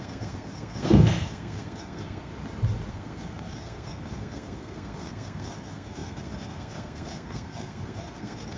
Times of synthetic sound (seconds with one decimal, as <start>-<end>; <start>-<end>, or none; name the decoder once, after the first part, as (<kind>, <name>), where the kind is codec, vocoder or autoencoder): 0.0-2.3 (codec, SNAC); 2.9-8.6